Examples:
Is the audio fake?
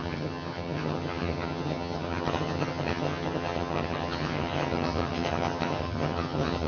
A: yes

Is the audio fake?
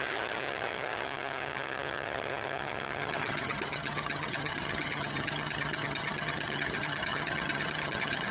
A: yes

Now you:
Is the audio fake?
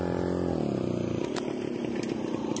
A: no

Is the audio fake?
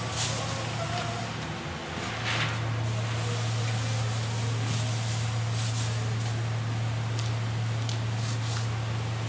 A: no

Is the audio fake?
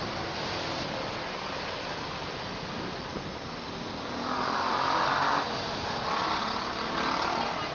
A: no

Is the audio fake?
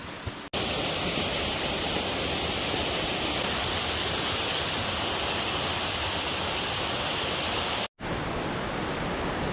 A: no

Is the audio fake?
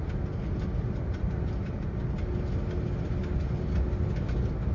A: no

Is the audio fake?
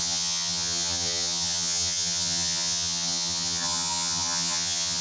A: yes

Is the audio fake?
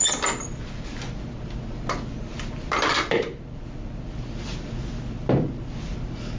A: no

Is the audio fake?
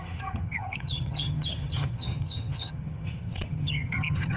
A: yes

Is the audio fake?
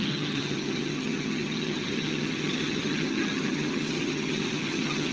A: yes